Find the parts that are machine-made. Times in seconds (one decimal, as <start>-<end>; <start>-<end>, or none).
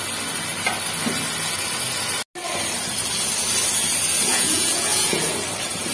4.3-5.2